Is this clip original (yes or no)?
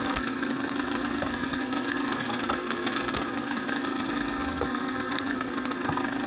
no